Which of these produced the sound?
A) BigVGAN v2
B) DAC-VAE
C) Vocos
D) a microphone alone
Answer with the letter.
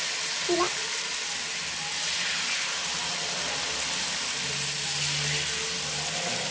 D